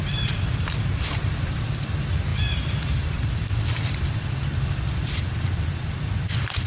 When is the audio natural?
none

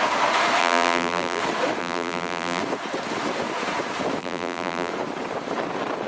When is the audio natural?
0.0-0.6; 1.4-1.8; 2.6-4.2; 4.9-6.1

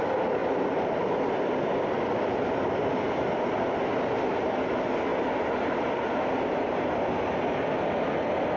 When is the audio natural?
0.0-0.4; 3.5-5.1; 6.4-8.6

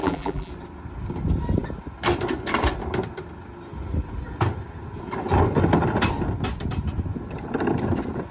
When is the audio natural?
0.5-8.3

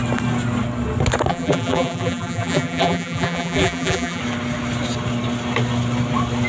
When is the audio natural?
0.0-1.3; 4.2-6.5

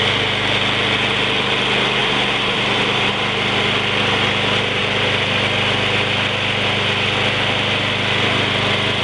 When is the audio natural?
0.0-2.0; 3.1-9.0

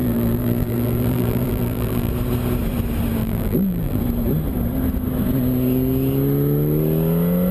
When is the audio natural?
2.1-3.2; 4.0-7.5